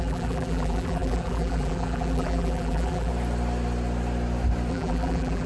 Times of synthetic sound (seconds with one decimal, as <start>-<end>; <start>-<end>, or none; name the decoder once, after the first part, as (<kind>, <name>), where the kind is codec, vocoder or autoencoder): 0.0-3.1 (vocoder, BigVGAN v2); 4.7-5.5